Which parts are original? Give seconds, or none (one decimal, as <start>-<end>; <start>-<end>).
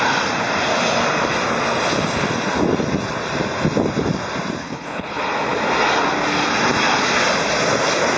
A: 0.0-4.6; 5.2-8.2